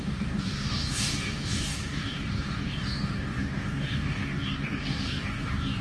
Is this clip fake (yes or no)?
yes